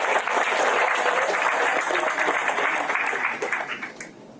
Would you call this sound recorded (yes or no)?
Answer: no